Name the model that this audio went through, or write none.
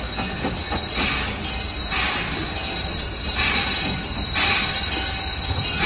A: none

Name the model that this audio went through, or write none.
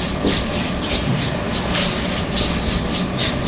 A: none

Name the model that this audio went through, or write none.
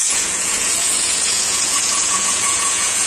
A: vocoder, Vocos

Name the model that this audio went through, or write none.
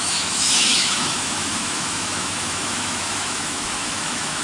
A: autoencoder, DAC-VAE